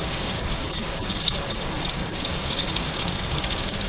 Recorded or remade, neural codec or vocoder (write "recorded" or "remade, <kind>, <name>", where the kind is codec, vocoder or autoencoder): remade, codec, DAC